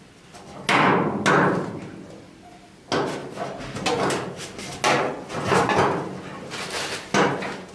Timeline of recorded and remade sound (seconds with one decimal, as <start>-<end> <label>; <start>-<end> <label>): 0.0-7.7 recorded